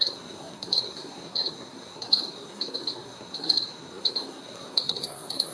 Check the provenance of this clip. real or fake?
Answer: fake